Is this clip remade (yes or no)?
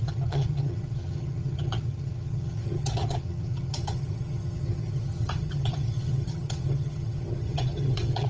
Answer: yes